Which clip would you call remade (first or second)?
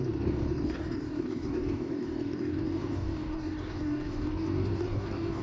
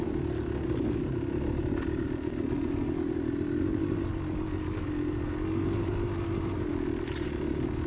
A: first